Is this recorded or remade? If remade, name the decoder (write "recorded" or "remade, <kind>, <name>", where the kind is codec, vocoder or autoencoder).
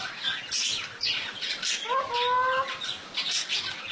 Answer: recorded